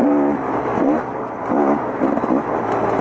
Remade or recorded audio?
remade